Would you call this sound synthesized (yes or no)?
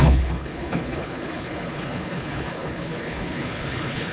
yes